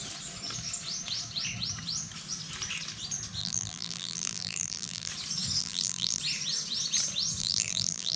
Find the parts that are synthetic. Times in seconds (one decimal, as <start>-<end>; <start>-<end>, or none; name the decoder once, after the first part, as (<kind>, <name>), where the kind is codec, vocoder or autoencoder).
3.4-5.1 (vocoder, BigVGAN v2); 5.6-6.2; 7.4-8.2